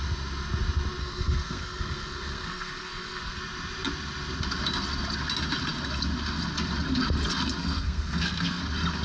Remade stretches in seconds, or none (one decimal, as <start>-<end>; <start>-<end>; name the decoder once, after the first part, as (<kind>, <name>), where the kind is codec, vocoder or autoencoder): 1.0-3.4 (codec, SNAC); 7.6-8.6